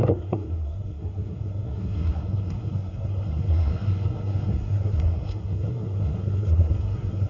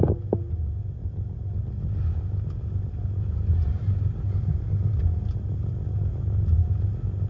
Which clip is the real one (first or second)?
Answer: second